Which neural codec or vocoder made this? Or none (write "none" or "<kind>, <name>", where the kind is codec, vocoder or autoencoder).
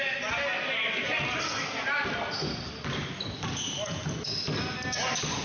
none